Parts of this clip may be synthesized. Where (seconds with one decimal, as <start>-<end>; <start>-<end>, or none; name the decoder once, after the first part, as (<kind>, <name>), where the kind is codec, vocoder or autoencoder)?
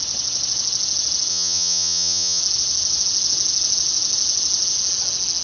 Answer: 1.3-2.4 (vocoder, HiFi-GAN)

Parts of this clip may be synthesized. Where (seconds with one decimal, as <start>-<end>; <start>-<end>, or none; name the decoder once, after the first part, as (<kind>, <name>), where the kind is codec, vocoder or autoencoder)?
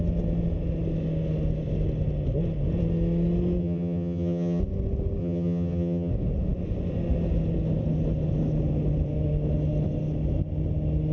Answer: 3.6-4.6 (vocoder, HiFi-GAN); 5.2-6.1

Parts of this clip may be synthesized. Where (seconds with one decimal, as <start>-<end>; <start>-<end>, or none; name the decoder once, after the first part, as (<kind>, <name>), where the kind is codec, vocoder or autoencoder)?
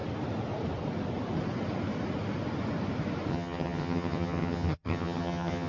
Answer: 3.3-5.7 (vocoder, HiFi-GAN)